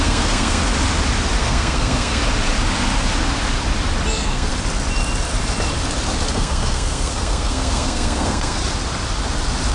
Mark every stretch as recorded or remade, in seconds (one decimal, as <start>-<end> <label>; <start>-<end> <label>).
0.0-0.6 remade; 0.6-1.4 recorded; 1.4-2.2 remade; 2.2-4.1 recorded; 4.1-4.5 remade; 4.5-6.3 recorded; 6.3-8.6 remade; 8.6-9.7 recorded